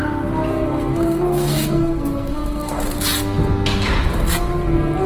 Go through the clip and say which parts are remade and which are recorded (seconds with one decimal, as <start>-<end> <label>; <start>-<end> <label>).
0.0-0.5 recorded; 0.5-2.8 remade; 2.8-5.1 recorded